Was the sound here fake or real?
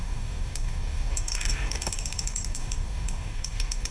fake